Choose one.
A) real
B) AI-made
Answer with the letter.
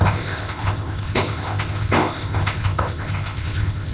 B